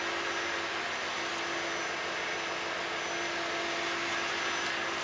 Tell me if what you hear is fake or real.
real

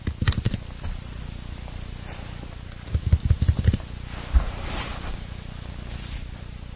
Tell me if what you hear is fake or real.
real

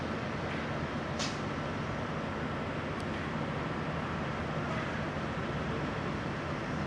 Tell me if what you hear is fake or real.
real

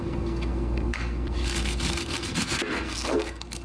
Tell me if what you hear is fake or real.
fake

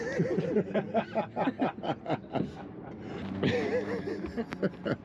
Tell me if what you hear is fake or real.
real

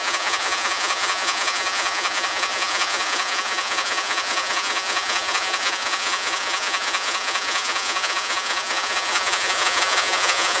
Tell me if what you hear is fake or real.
fake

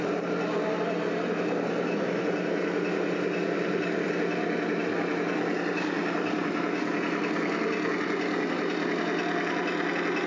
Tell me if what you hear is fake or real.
real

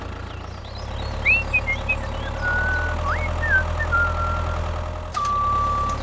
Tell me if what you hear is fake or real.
real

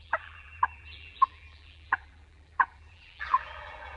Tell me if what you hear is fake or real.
fake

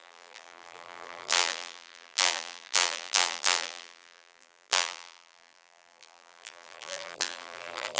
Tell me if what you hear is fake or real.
fake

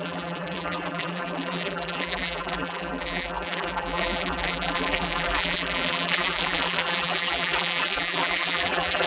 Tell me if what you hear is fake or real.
fake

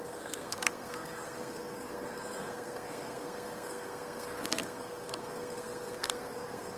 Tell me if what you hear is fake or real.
fake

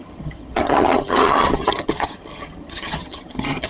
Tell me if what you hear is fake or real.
fake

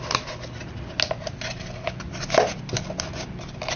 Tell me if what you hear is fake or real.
real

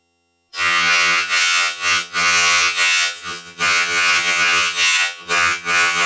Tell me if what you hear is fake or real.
fake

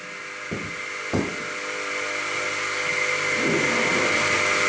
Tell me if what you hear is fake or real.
real